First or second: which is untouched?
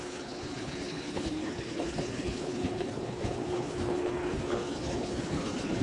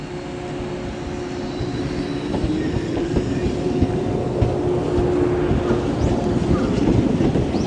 second